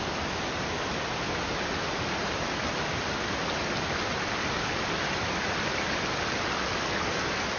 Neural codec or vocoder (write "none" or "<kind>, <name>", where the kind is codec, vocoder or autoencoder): none